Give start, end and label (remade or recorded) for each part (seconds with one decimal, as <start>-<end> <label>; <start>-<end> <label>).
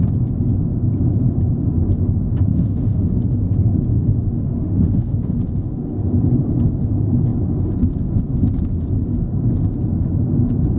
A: 0.0-2.5 recorded; 2.5-3.5 remade; 3.5-3.9 recorded; 3.9-5.4 remade; 5.4-10.8 recorded